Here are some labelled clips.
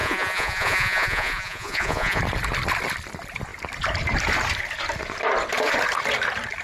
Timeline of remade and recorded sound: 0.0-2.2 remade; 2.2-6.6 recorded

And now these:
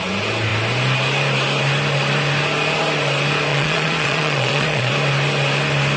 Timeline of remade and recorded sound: 0.0-3.5 recorded; 3.5-4.9 remade; 4.9-6.0 recorded

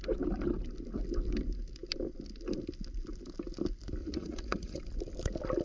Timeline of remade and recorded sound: 0.0-4.0 recorded; 4.0-4.8 remade; 4.8-5.6 recorded